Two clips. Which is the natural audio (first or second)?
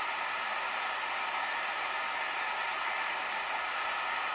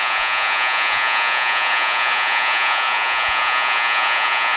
first